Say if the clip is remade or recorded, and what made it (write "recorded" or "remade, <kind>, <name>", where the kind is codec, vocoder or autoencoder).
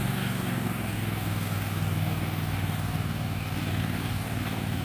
remade, codec, DAC